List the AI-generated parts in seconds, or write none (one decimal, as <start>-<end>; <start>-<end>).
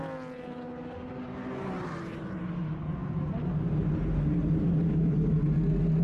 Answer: none